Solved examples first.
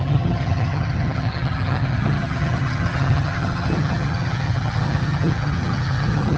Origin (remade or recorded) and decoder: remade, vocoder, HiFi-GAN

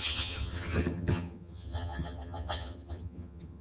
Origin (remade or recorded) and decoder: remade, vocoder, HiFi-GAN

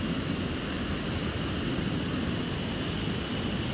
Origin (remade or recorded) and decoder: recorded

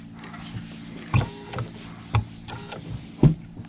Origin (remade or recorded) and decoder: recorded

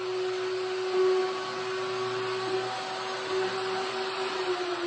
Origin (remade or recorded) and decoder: recorded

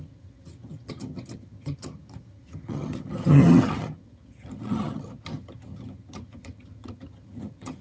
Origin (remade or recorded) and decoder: remade, vocoder, HiFi-GAN